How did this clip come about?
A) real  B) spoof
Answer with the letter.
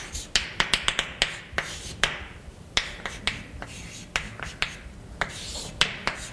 A